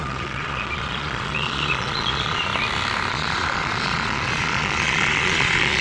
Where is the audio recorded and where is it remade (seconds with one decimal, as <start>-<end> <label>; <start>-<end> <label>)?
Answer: 0.0-2.5 remade; 2.5-3.1 recorded; 3.1-5.8 remade